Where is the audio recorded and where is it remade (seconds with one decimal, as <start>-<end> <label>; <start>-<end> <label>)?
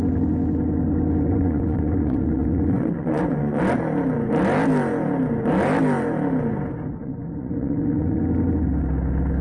0.0-1.3 recorded; 1.3-3.6 remade; 3.6-7.0 recorded; 7.0-8.2 remade; 8.2-9.4 recorded